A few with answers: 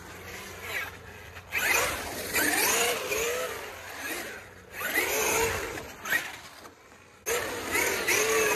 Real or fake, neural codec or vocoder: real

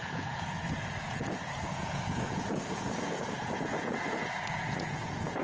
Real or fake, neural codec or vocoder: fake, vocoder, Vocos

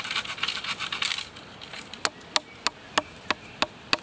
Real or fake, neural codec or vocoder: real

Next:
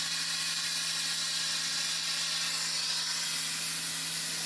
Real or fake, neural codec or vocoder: real